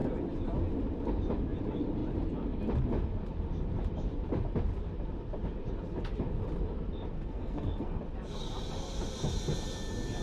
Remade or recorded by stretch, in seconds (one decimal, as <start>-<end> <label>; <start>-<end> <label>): 0.0-7.1 recorded; 7.1-8.0 remade; 8.0-10.2 recorded